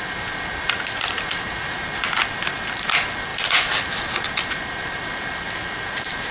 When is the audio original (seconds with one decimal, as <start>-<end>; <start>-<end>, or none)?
0.0-6.3